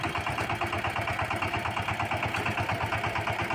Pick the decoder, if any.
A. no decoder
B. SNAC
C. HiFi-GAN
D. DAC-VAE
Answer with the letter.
A